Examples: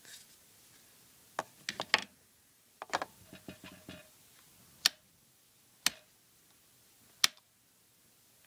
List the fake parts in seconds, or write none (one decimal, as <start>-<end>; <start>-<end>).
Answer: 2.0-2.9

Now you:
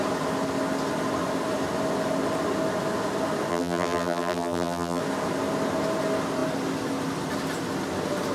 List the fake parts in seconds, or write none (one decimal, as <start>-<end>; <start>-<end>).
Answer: 3.5-5.0

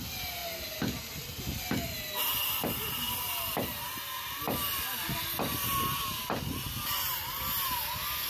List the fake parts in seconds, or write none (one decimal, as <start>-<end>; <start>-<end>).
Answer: none

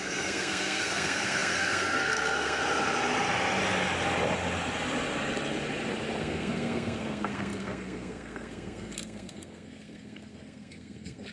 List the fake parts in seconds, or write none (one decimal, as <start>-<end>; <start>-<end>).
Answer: 0.0-2.6; 6.2-11.3

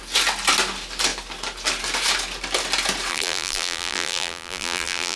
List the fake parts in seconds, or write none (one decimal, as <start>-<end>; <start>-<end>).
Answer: 3.1-5.2

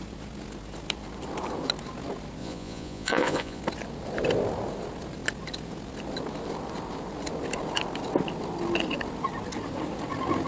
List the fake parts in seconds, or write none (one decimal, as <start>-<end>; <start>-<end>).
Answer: 2.4-3.6